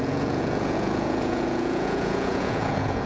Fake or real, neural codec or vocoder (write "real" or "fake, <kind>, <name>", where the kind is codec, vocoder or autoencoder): fake, vocoder, Vocos